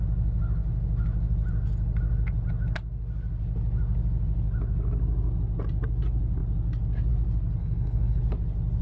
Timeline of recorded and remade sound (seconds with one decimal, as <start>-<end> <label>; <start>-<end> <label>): 0.0-7.6 recorded; 7.6-8.2 remade; 8.2-8.8 recorded